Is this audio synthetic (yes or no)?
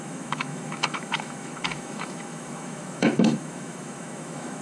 yes